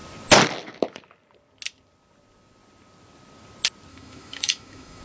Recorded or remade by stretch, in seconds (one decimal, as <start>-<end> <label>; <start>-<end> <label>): 0.0-3.9 recorded; 3.9-5.0 remade